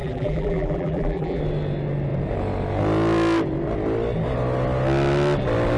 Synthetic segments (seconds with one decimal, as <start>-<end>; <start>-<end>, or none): 0.0-1.4